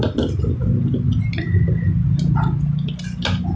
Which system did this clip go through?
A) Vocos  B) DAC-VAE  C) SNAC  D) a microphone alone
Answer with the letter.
D